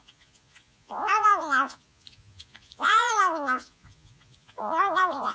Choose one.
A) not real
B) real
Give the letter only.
A